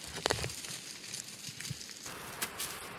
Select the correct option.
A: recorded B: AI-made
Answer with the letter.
A